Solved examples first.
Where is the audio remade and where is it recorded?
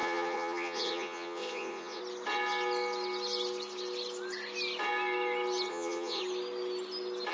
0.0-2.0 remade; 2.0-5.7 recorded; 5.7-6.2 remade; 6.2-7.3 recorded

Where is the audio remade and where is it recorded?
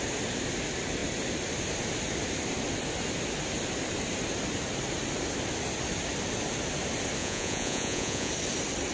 0.0-7.2 recorded; 7.2-8.3 remade; 8.3-8.9 recorded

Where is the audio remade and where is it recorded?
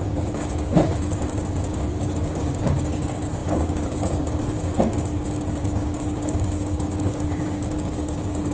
0.0-8.5 remade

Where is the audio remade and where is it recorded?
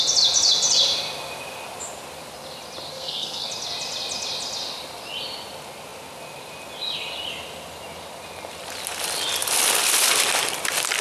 0.0-2.9 recorded; 2.9-3.5 remade; 3.5-11.0 recorded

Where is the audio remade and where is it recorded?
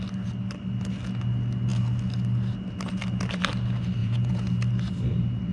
0.0-4.0 recorded; 4.0-4.5 remade; 4.5-5.5 recorded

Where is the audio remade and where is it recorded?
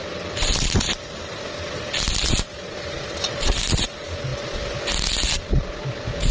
0.0-6.3 recorded